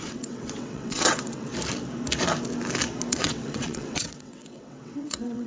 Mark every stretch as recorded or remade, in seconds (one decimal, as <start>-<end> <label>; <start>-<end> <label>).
0.0-1.5 remade; 1.5-3.1 recorded; 3.1-5.5 remade